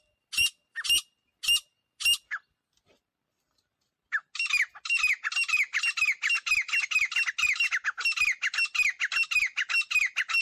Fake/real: real